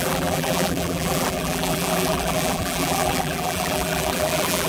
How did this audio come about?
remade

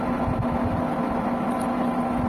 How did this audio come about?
recorded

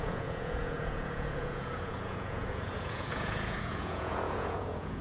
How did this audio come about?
remade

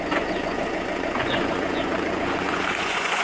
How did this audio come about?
remade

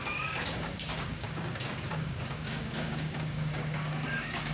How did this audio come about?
remade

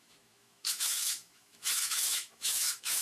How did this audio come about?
remade